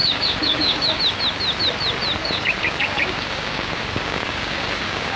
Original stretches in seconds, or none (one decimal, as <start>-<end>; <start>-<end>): 1.0-2.2